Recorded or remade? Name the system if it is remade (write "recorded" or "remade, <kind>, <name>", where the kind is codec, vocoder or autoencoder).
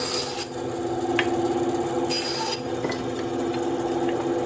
recorded